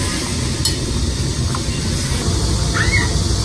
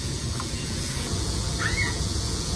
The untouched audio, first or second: first